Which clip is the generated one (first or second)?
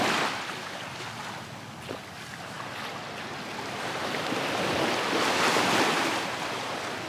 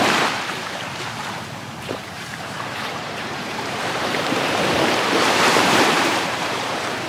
second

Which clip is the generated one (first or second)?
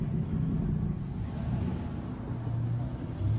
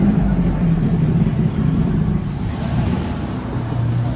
second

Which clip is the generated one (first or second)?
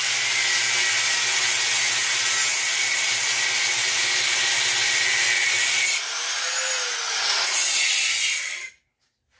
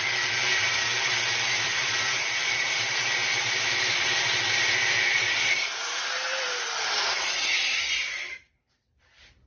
second